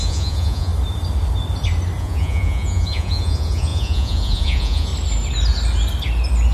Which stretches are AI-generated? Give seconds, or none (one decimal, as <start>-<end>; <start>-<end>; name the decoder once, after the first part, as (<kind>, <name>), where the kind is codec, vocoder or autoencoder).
0.0-0.7 (vocoder, Vocos); 2.0-4.9